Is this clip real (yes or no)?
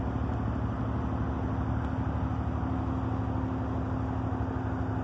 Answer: yes